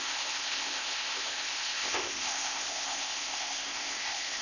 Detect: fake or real fake